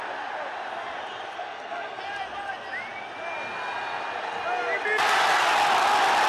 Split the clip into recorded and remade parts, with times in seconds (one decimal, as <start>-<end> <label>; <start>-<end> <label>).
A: 0.0-1.3 recorded; 1.3-2.0 remade; 2.0-6.3 recorded